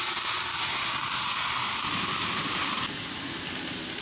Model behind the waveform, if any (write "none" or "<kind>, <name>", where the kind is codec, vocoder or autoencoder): none